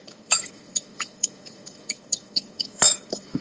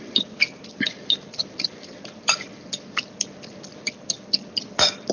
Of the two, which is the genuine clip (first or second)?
second